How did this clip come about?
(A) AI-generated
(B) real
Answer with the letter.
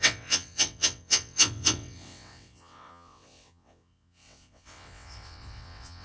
A